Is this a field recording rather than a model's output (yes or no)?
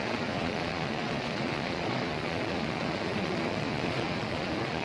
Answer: no